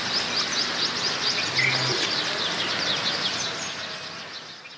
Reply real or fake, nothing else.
real